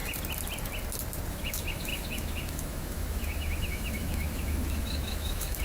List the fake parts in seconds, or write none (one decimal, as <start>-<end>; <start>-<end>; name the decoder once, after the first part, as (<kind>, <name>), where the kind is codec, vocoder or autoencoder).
1.3-5.6 (autoencoder, DAC-VAE)